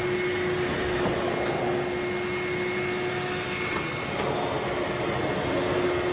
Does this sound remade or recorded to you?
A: recorded